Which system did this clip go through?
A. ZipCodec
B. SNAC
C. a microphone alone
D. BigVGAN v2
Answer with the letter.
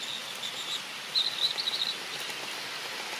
C